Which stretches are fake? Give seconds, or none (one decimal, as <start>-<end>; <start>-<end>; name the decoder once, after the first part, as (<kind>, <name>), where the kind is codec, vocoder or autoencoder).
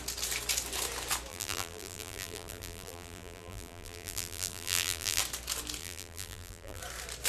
1.3-5.2 (vocoder, BigVGAN v2); 5.8-6.8